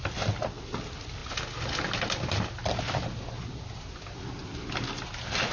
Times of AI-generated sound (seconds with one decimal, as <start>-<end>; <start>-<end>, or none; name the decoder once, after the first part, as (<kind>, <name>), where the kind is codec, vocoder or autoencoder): none